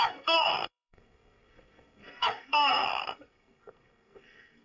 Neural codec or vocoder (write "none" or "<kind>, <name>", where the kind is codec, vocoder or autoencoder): codec, SNAC